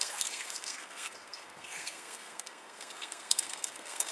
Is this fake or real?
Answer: fake